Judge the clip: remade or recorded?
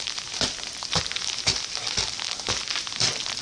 recorded